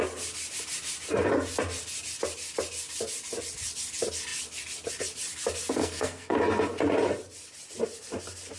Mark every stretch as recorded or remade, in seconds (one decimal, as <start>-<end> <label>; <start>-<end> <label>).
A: 0.0-5.8 recorded; 5.8-6.4 remade; 6.4-8.6 recorded